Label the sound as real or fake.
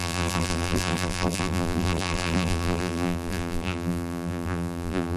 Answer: fake